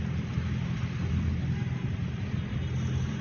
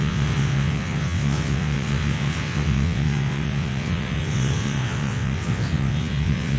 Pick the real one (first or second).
first